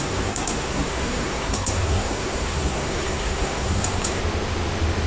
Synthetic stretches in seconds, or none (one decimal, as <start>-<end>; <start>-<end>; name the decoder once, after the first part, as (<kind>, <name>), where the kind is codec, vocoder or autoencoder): 0.0-4.2 (codec, SNAC)